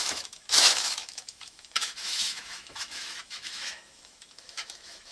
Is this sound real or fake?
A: fake